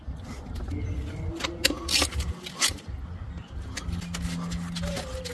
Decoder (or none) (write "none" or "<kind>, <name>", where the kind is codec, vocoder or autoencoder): none